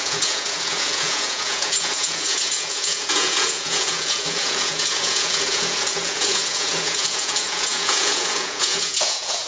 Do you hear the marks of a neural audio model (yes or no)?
yes